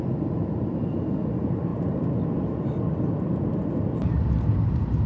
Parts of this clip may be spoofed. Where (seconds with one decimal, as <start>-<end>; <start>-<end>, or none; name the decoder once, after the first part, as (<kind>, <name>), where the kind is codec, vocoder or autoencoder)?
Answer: none